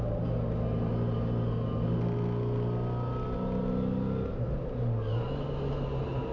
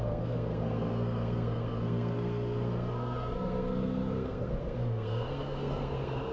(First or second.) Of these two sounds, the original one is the first